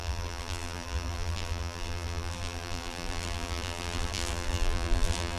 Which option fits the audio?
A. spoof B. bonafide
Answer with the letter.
A